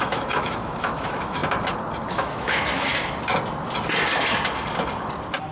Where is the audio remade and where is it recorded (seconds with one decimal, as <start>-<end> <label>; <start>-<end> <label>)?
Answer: 0.0-1.4 remade; 1.4-2.1 recorded; 2.1-2.9 remade; 2.9-5.5 recorded